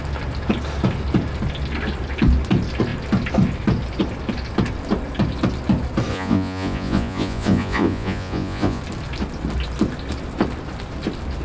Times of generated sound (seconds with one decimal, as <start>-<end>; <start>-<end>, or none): 6.1-8.8